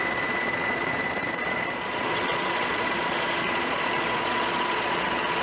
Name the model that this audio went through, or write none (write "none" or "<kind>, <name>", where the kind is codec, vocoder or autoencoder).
vocoder, Vocos